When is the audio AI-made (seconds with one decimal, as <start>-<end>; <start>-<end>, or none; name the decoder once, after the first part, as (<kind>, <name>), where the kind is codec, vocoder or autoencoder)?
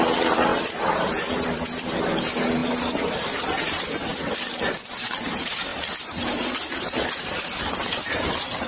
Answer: 0.0-2.6 (vocoder, BigVGAN v2); 3.3-4.1; 5.2-8.7